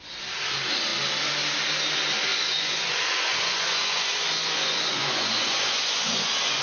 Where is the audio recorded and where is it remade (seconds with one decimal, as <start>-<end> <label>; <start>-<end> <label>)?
0.0-2.3 recorded; 2.3-6.6 remade

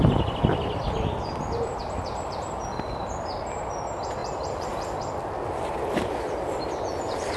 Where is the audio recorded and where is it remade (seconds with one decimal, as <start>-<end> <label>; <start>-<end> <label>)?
0.0-7.4 recorded

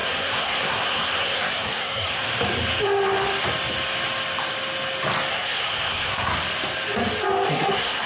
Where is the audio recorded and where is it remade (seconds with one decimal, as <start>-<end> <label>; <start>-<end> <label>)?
0.0-2.2 remade; 2.2-5.3 recorded; 5.3-6.3 remade; 6.3-7.5 recorded; 7.5-8.1 remade